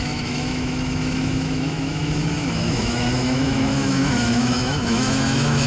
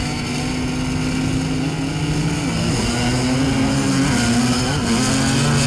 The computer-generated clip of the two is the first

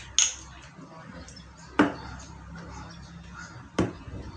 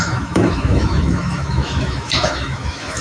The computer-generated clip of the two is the second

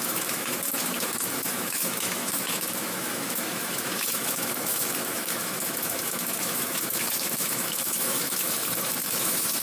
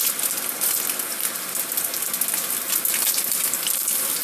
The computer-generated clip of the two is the first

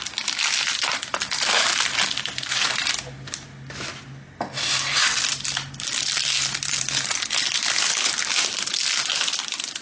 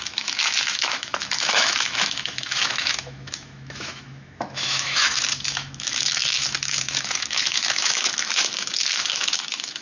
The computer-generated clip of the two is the second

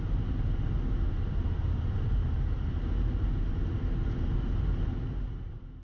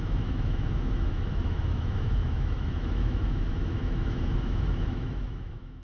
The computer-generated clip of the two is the second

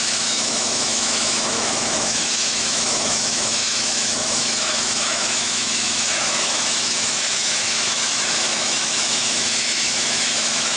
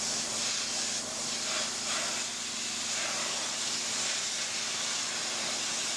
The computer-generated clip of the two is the first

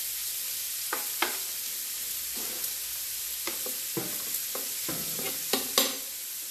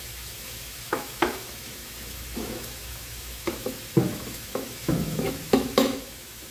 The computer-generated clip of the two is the second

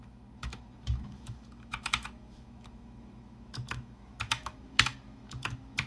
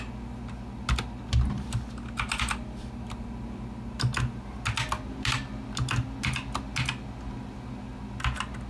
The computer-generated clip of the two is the first